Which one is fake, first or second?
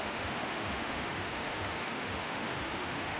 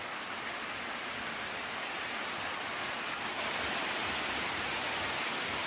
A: first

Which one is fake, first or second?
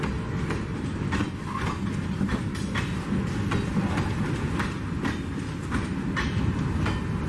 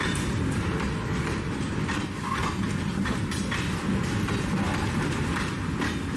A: second